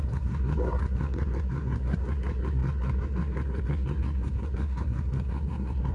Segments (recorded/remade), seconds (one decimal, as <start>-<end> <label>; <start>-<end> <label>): 0.0-5.9 remade